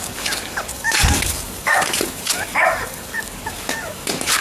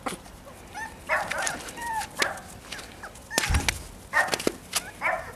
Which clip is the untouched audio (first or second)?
second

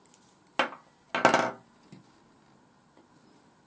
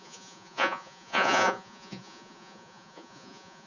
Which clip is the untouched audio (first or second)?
first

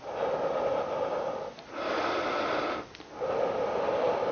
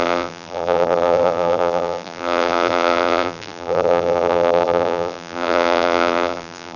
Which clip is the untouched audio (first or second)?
first